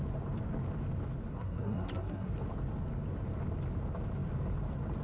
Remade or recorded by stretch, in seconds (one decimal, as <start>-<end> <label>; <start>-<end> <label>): 0.0-1.3 recorded; 1.3-2.3 remade; 2.3-5.0 recorded

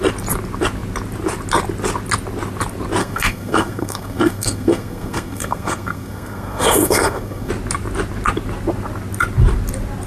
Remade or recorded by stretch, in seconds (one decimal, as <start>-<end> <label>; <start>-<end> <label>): 0.0-3.0 recorded; 3.0-7.5 remade; 7.5-10.1 recorded